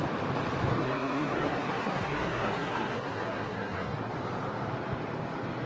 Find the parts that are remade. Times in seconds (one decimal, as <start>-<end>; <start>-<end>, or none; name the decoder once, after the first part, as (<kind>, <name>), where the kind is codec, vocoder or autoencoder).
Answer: 0.7-4.1 (codec, SNAC)